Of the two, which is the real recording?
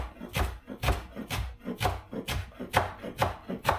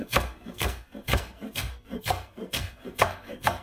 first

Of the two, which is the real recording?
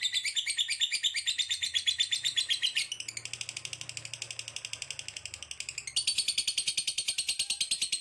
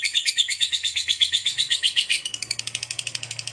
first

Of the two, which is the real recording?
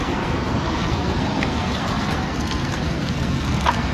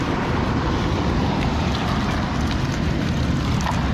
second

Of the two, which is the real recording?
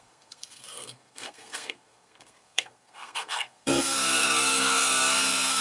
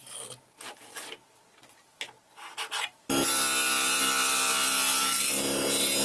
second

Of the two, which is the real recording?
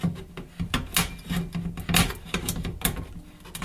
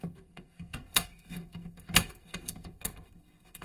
first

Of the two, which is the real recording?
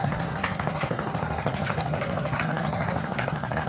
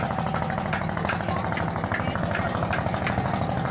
second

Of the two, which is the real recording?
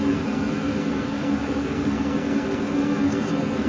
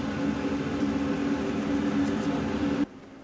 second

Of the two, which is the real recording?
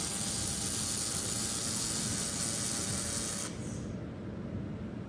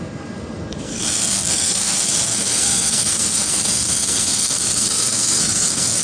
first